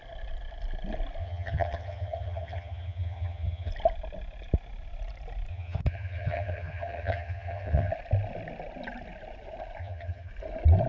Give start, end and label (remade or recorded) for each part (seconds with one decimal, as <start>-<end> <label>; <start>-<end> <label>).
0.0-1.2 recorded; 1.2-3.7 remade; 3.7-5.5 recorded; 5.5-7.9 remade; 7.9-9.8 recorded; 9.8-10.3 remade; 10.3-10.9 recorded